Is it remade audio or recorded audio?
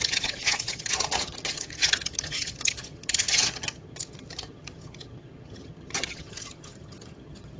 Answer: remade